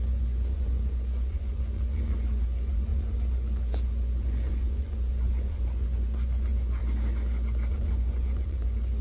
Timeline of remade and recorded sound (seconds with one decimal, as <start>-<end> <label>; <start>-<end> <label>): 0.0-6.8 remade; 6.8-7.7 recorded; 7.7-9.0 remade